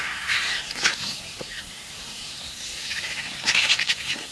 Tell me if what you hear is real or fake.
fake